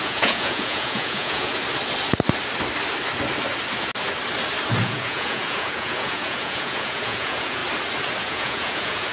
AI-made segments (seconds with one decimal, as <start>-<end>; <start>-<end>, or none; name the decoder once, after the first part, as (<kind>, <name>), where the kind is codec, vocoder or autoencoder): 0.0-1.5 (vocoder, Vocos); 4.8-7.6; 8.2-9.1